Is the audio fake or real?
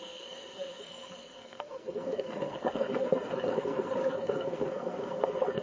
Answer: fake